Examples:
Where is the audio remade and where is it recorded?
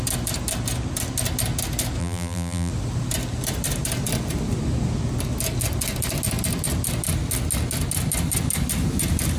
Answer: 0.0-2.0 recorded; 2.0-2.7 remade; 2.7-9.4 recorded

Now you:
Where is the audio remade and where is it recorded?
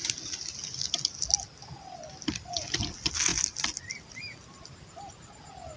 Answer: 0.0-5.8 recorded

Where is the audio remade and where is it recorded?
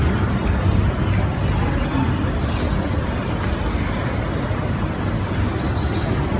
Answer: 0.0-1.9 recorded; 1.9-2.7 remade; 2.7-5.5 recorded; 5.5-6.4 remade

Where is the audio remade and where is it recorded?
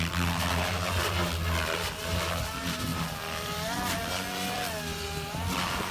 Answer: 0.0-2.9 recorded; 2.9-5.9 remade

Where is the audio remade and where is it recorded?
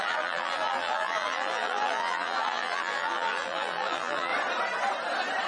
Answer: 0.0-4.3 remade; 4.3-5.5 recorded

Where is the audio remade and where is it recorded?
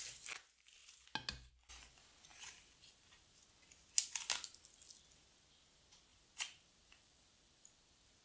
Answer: 0.0-2.3 recorded; 2.3-3.3 remade; 3.3-6.1 recorded; 6.1-8.2 remade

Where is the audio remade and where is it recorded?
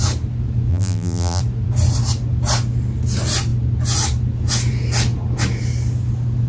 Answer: 0.0-0.7 recorded; 0.7-1.4 remade; 1.4-6.5 recorded